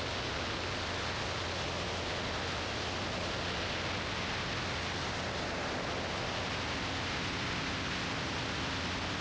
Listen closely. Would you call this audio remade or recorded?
recorded